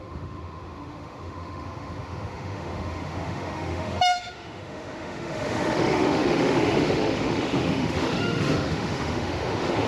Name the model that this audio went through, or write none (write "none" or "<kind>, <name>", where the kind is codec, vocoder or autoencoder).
autoencoder, DAC-VAE